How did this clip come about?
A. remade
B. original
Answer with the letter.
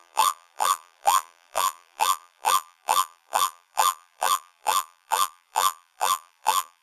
A